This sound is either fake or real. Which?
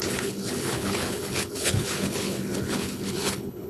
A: fake